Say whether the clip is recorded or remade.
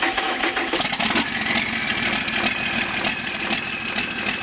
recorded